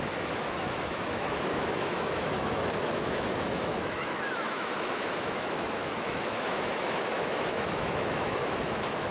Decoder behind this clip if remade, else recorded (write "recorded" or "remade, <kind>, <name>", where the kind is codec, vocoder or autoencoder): remade, autoencoder, DAC-VAE